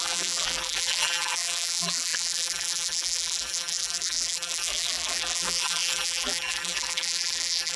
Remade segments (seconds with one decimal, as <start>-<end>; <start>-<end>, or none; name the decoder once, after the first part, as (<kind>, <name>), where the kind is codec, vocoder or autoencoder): 0.0-7.8 (vocoder, BigVGAN v2)